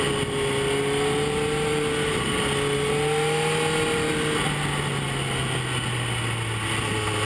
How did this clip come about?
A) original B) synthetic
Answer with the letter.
A